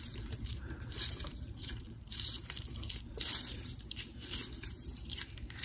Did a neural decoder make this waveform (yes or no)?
yes